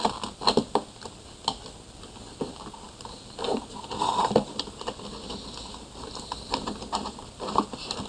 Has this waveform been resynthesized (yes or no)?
no